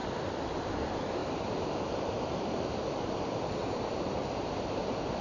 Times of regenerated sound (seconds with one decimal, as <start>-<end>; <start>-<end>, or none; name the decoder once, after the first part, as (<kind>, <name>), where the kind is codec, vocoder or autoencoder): 1.2-4.3 (vocoder, BigVGAN v2)

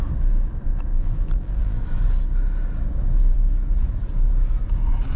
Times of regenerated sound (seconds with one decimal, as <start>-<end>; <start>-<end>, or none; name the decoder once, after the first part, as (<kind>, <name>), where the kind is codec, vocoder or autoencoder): 0.9-1.8 (vocoder, BigVGAN v2)

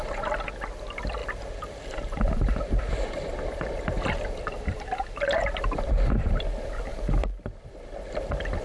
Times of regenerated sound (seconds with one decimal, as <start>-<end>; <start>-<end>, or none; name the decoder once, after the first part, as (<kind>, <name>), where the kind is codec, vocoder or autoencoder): 1.2-6.4 (vocoder, BigVGAN v2)

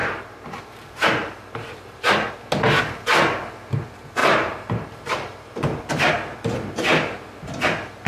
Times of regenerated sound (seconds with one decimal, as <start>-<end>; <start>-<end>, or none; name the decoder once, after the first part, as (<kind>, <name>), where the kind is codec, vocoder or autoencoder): 0.0-2.3 (vocoder, BigVGAN v2); 4.2-6.1

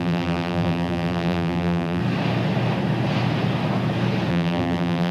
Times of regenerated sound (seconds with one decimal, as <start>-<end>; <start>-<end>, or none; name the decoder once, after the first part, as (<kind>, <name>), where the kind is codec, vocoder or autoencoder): 0.0-2.0 (vocoder, BigVGAN v2); 4.3-5.1

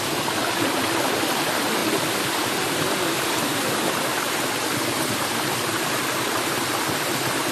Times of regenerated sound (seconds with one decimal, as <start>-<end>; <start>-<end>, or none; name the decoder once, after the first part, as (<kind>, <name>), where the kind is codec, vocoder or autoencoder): 1.8-6.3 (vocoder, BigVGAN v2)

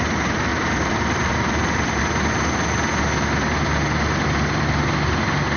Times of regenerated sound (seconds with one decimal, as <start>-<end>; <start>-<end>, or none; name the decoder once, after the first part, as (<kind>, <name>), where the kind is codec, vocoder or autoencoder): 0.5-2.0 (vocoder, BigVGAN v2)

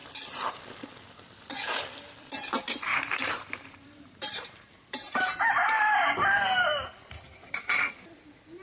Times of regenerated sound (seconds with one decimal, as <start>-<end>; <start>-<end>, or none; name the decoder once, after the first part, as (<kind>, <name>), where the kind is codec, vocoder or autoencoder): 2.9-5.2 (vocoder, BigVGAN v2)